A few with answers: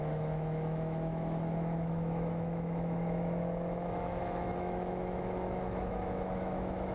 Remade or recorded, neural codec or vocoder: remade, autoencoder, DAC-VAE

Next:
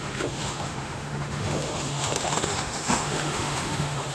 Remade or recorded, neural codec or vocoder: remade, autoencoder, DAC-VAE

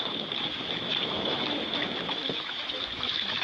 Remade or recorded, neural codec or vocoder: remade, autoencoder, DAC-VAE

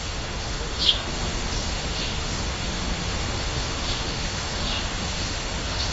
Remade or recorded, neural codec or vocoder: remade, autoencoder, DAC-VAE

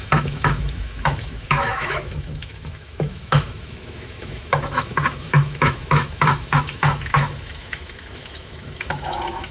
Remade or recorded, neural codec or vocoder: remade, autoencoder, DAC-VAE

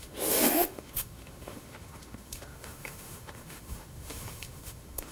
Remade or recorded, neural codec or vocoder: remade, autoencoder, DAC-VAE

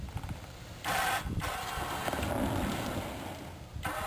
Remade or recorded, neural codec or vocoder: recorded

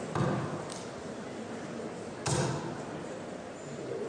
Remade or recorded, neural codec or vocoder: recorded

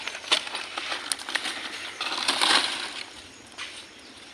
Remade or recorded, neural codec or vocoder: recorded